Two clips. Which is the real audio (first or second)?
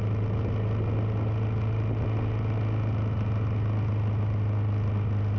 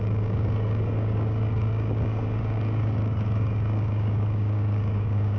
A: first